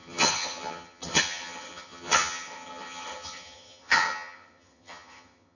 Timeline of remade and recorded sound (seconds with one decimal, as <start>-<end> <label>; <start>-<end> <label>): 0.0-5.6 remade